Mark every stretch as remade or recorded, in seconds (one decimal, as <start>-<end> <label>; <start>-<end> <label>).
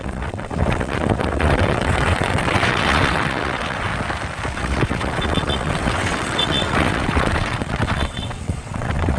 0.0-3.9 remade; 3.9-4.5 recorded; 4.5-9.2 remade